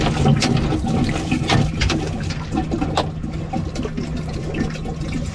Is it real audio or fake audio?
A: real